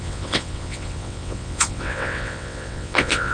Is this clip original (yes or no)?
no